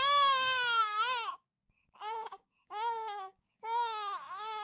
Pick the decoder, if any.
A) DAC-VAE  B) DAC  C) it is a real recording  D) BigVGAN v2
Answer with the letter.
B